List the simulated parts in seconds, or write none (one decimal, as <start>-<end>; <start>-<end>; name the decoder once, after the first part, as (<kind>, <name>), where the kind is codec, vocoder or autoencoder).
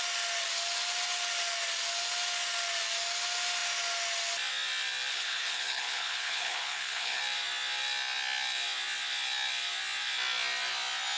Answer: 5.1-7.2 (codec, HILCodec)